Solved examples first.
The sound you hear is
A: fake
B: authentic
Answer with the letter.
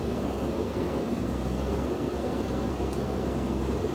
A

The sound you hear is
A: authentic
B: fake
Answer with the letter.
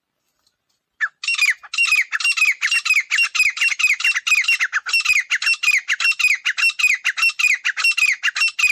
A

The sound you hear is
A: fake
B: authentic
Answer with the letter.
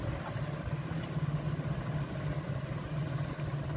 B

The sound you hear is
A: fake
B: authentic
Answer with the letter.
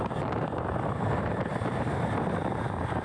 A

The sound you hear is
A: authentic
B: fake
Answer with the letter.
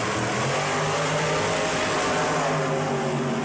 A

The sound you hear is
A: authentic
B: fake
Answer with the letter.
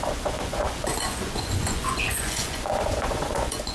B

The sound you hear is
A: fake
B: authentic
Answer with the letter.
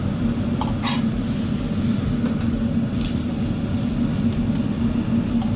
B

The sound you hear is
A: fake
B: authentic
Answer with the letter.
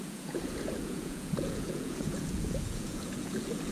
A